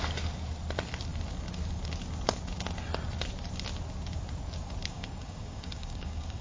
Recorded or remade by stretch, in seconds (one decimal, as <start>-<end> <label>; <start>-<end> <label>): 0.0-4.9 recorded; 4.9-6.4 remade